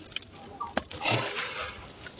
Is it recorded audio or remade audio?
recorded